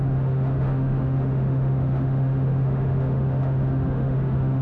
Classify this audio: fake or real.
fake